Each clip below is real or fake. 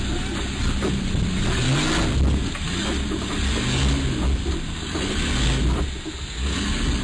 real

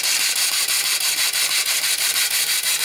fake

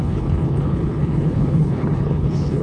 fake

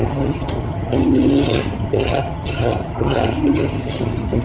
fake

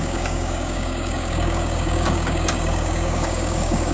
fake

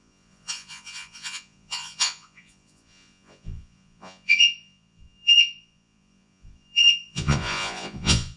fake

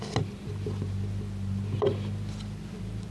real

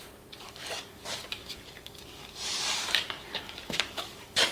fake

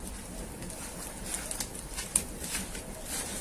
real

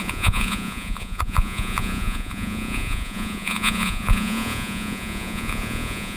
fake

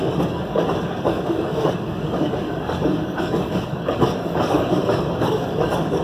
fake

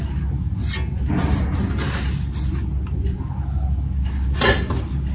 real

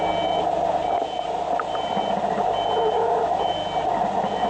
real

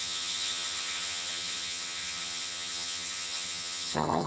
fake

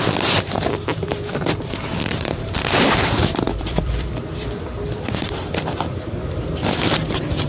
fake